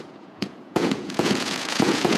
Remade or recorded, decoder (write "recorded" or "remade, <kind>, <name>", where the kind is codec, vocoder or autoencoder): remade, vocoder, Vocos